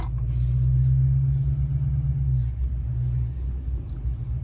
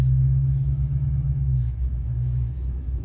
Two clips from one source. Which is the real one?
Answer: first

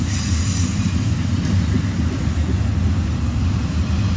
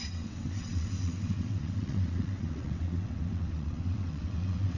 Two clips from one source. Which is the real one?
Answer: first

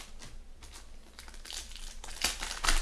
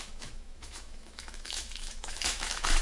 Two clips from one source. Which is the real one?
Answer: first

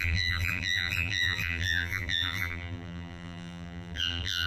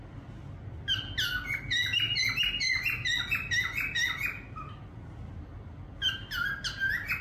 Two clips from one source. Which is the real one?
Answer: second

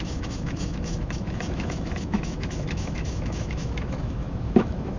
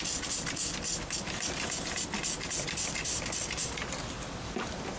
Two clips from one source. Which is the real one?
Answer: second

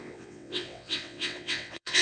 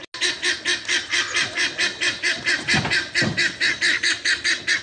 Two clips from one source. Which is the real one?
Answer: second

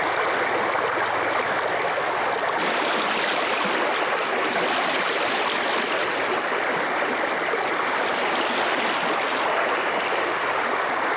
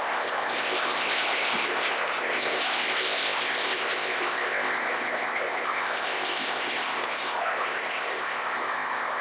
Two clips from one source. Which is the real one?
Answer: first